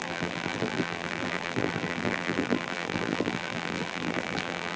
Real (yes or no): no